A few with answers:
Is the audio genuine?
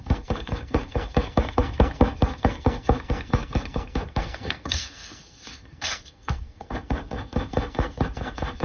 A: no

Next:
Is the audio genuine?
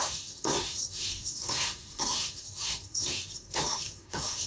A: no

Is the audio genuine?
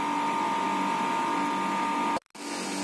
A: yes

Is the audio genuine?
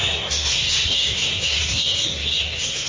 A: no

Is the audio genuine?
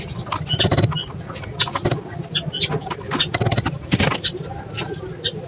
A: yes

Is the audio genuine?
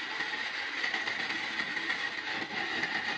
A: yes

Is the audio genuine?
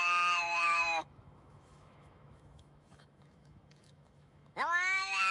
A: no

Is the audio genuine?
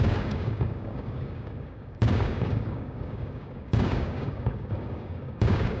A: no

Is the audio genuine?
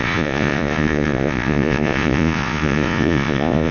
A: no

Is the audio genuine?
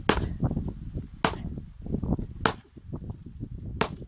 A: yes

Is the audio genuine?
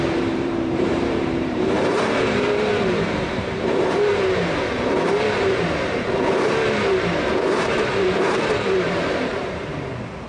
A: no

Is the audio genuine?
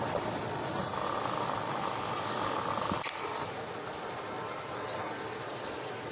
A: yes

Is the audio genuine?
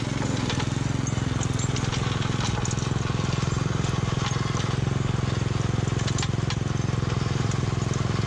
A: yes